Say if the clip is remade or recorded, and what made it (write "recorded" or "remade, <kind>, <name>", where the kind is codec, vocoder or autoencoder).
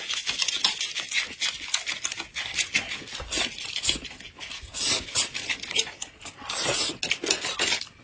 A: recorded